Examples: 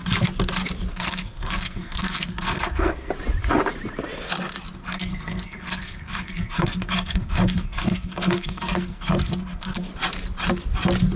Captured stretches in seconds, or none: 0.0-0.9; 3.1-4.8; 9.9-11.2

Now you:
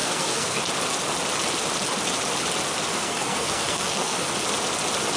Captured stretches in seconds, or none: 0.6-2.9; 4.3-5.2

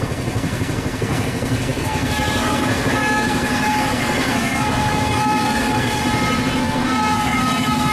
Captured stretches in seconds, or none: 6.0-6.6

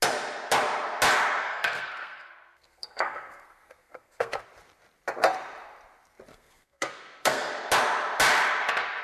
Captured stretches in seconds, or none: 0.0-1.4; 4.4-6.3; 7.5-9.0

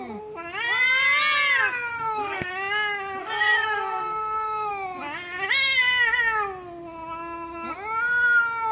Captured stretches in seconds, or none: 0.0-1.9; 2.5-3.2; 4.7-8.7

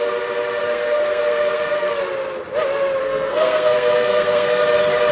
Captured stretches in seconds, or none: 0.0-0.6; 1.9-3.0; 4.6-5.1

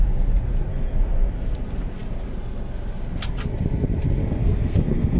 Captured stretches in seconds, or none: 0.0-0.7; 1.3-4.2

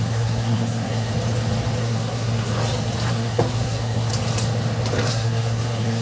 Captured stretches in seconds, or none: 1.1-1.8; 2.5-3.1; 4.1-5.1